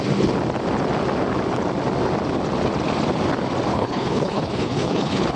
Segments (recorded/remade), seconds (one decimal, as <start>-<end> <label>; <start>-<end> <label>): 0.0-3.7 recorded; 3.7-5.4 remade